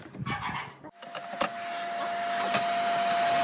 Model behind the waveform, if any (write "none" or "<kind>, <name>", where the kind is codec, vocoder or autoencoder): none